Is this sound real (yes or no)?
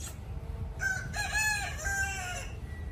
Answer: yes